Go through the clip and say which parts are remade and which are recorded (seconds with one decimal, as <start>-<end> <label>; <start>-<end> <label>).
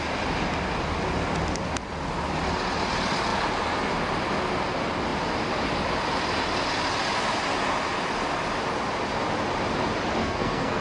0.0-10.2 recorded; 10.2-10.8 remade